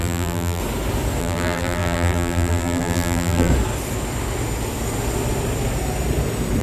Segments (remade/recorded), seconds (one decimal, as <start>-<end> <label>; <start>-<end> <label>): 0.0-0.6 remade; 0.6-1.2 recorded; 1.2-3.5 remade; 3.5-6.6 recorded